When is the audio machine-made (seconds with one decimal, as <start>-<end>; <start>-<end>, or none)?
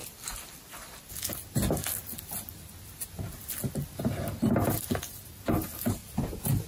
4.0-6.0